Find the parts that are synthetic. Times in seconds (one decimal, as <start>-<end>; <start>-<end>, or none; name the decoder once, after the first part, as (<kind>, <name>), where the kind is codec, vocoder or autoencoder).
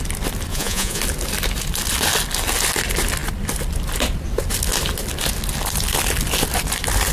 0.5-1.0 (vocoder, Vocos)